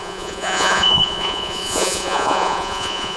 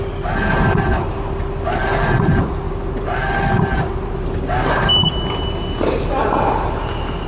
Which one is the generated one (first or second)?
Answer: first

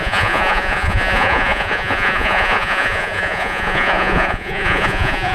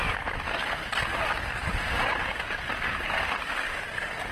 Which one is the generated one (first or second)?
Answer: first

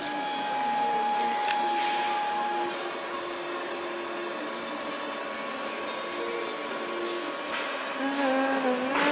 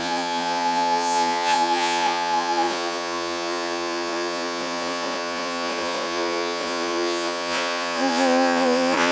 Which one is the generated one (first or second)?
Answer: second